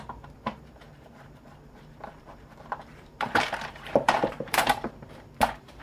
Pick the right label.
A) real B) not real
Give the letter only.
B